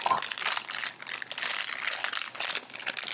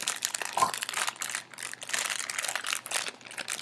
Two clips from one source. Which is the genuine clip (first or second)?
second